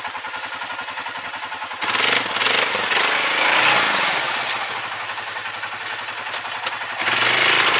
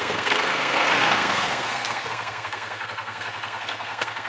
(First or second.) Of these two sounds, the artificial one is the second